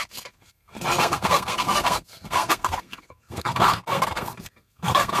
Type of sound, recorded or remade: remade